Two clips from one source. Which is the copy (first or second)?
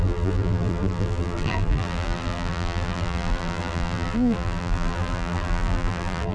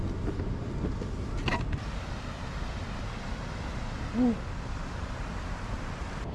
first